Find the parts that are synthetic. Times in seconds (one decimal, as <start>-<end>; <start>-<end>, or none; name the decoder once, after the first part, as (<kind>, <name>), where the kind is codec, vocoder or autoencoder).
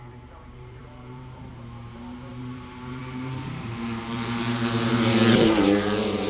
0.0-6.3 (vocoder, BigVGAN v2)